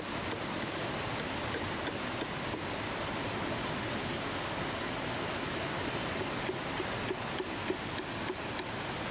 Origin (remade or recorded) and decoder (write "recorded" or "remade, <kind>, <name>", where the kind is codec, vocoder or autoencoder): recorded